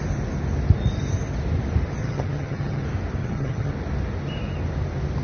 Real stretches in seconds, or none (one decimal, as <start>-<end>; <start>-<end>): 0.0-2.0; 2.8-3.2; 3.7-5.2